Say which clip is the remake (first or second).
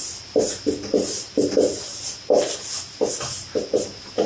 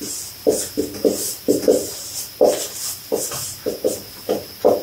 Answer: second